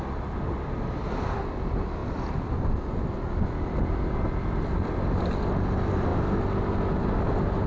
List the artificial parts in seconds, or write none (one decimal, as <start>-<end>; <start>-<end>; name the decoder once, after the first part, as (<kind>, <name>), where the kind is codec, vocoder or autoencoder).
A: none